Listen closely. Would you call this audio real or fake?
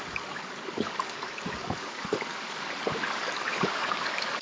fake